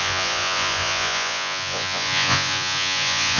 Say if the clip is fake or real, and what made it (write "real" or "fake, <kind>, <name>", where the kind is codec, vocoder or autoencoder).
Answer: fake, vocoder, Vocos